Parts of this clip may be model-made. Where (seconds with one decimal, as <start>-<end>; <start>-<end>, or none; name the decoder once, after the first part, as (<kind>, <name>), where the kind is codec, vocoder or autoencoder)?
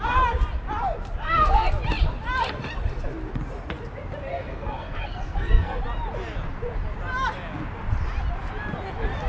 1.2-1.7 (codec, SNAC); 4.3-5.8